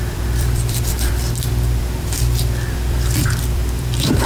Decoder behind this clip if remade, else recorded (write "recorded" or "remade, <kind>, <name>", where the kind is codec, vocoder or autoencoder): remade, vocoder, BigVGAN v2